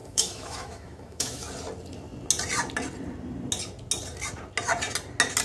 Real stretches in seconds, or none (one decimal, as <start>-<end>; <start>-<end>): 1.5-5.4